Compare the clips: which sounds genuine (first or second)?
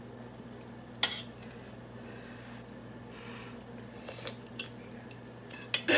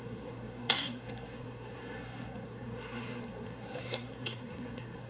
first